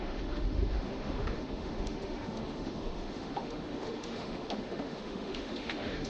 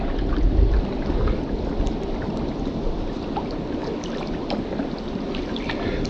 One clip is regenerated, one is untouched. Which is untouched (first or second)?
second